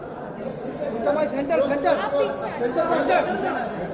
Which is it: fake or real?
real